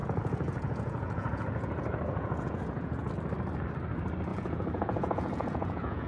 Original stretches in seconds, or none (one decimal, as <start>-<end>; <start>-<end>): 3.1-4.3